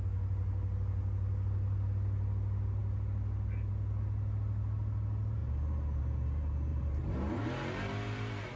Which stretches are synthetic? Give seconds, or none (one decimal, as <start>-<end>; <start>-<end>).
6.7-7.3